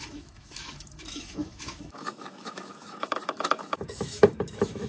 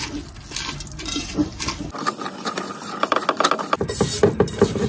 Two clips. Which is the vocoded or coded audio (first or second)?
first